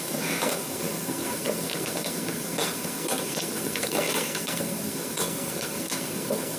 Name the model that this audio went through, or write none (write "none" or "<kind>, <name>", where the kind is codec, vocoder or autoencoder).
codec, SNAC